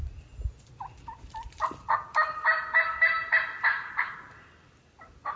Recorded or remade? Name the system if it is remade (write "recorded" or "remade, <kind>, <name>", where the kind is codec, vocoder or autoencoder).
recorded